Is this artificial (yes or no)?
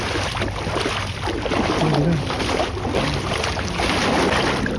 no